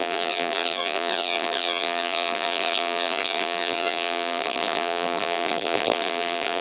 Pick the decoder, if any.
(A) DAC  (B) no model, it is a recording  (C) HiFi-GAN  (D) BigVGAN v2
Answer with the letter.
D